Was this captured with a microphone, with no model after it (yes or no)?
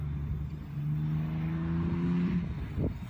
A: yes